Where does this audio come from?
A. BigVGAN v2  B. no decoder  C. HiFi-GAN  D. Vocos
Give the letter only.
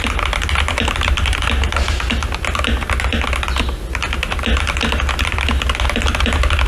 B